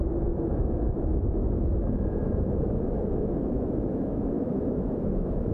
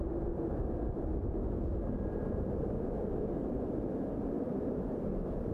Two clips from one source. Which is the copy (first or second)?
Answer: first